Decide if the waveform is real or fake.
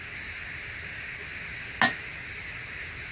real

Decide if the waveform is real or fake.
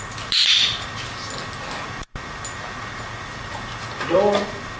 real